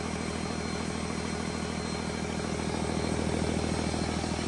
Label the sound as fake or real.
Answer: real